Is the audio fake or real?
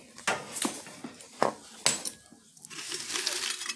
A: real